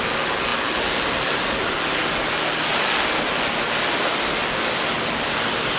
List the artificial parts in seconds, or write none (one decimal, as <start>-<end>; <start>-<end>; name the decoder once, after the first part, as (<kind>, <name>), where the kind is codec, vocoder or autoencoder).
none